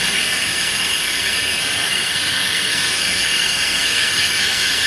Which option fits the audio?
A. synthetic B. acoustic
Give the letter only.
A